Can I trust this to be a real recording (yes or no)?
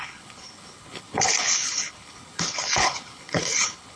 no